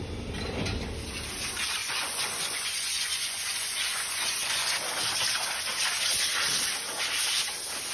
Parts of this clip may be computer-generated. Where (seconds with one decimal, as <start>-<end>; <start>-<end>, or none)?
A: 1.8-4.7